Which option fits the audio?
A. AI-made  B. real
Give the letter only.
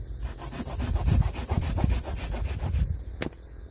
B